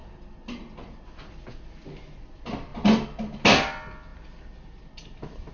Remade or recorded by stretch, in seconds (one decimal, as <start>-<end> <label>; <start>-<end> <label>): 0.0-5.5 recorded